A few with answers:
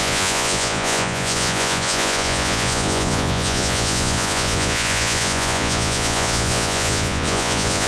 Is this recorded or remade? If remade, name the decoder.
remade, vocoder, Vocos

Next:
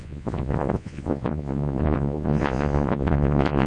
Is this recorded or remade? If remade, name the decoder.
remade, vocoder, Vocos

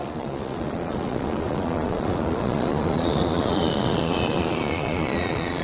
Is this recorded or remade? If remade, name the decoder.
remade, vocoder, Vocos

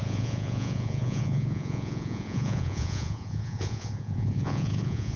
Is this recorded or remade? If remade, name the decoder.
remade, vocoder, Vocos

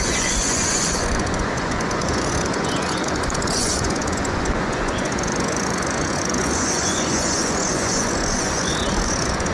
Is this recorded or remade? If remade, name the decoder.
remade, vocoder, Vocos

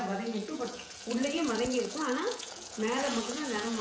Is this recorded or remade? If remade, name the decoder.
remade, vocoder, Vocos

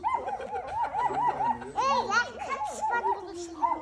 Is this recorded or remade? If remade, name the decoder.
recorded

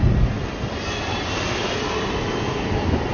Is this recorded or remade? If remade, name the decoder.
recorded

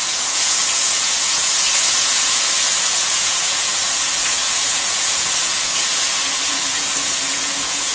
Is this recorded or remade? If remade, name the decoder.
remade, vocoder, Vocos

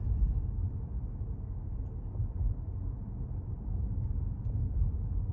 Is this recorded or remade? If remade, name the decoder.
recorded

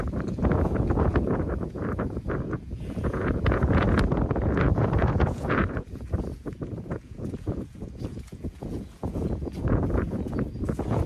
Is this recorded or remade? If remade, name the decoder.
remade, vocoder, Vocos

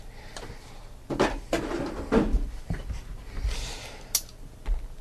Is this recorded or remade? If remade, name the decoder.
recorded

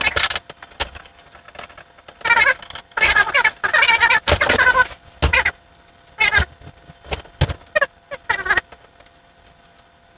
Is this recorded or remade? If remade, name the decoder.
recorded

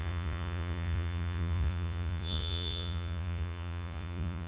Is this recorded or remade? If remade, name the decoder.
remade, vocoder, Vocos